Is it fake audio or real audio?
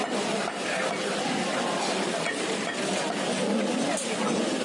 fake